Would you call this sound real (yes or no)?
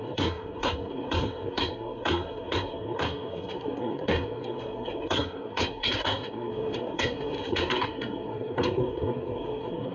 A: no